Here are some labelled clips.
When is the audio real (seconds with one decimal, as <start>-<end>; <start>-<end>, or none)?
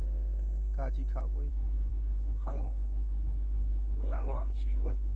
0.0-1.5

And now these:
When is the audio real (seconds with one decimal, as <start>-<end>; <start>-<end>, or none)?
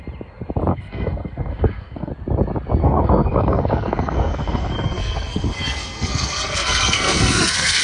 0.0-0.7; 2.1-2.8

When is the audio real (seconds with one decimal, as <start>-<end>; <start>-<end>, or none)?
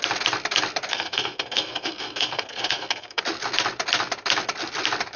0.0-0.9; 3.2-5.2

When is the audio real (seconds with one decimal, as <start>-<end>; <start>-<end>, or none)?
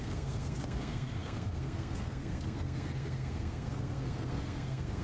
none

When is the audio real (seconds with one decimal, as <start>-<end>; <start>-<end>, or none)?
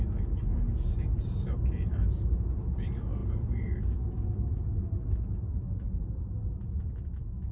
0.0-7.5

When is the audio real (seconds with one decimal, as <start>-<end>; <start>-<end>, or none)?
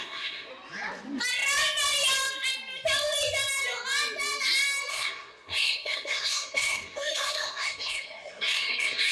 0.5-4.9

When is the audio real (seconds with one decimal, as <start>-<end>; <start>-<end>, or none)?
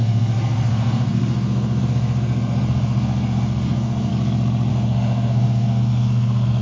4.1-4.7